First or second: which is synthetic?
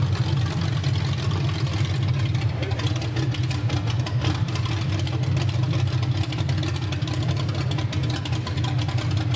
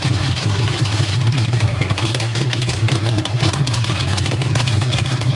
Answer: second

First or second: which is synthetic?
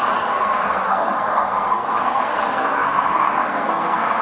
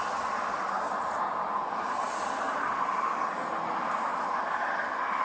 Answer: first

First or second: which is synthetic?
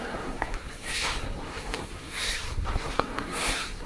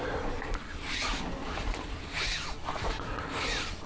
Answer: first